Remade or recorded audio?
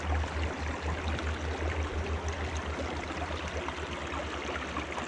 recorded